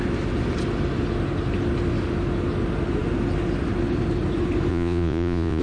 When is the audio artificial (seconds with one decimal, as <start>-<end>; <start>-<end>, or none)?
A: 4.7-5.6